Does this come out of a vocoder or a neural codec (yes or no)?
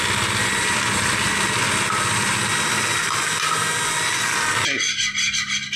no